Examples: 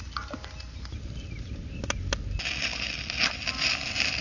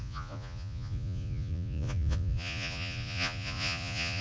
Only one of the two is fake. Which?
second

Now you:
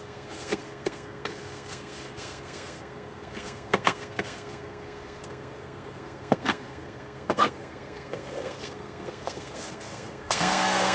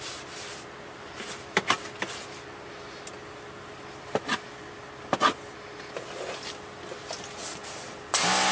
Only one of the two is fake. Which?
first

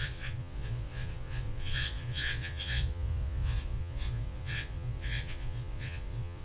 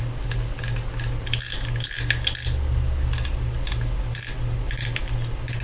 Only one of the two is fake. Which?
first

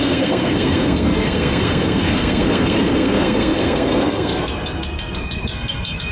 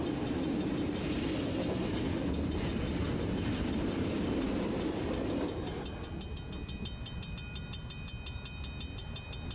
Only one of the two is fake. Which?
first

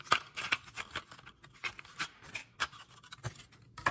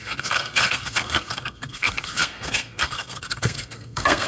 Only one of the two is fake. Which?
second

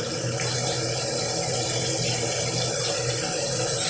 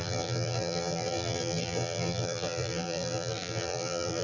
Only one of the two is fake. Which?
second